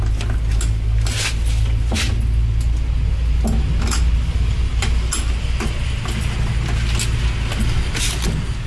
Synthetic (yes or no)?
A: no